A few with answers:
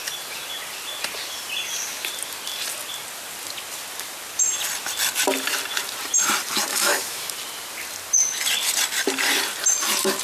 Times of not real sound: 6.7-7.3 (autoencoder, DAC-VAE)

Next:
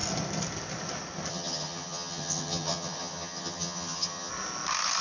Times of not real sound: 1.3-4.3 (vocoder, HiFi-GAN)

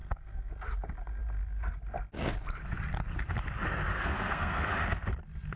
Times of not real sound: 0.0-0.5 (codec, SNAC); 3.9-4.6

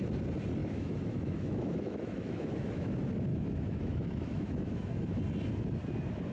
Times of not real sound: 0.6-2.9 (autoencoder, DAC-VAE); 3.3-5.2

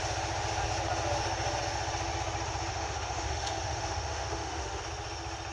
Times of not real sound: 2.7-4.8 (autoencoder, DAC-VAE)

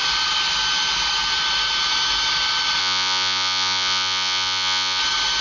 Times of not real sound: 2.8-5.0 (vocoder, Vocos)

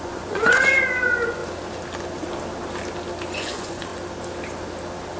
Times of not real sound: 0.0-1.4 (vocoder, Vocos); 3.3-3.9